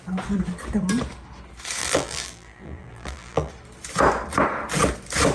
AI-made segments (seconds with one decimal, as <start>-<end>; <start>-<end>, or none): 1.8-3.5